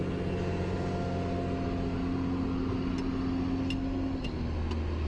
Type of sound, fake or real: real